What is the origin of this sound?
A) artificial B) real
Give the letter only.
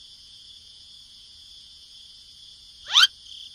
A